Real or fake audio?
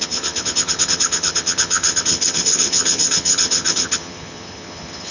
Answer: fake